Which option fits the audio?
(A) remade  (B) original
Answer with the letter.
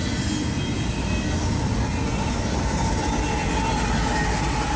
B